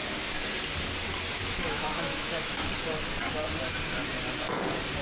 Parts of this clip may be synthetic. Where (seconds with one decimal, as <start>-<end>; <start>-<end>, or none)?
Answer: 1.4-2.7